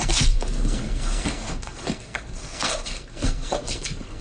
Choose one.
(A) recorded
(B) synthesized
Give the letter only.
B